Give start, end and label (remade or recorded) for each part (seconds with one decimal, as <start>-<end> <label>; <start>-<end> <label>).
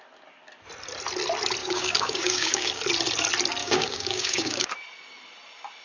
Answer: 0.0-1.6 recorded; 1.6-2.8 remade; 2.8-3.6 recorded; 3.6-4.7 remade; 4.7-5.8 recorded